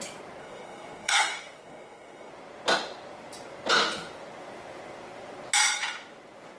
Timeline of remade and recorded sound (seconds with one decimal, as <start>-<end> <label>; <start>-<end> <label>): 0.0-0.4 recorded; 0.4-2.3 remade; 2.3-6.6 recorded